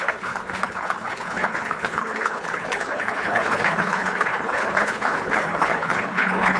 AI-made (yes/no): yes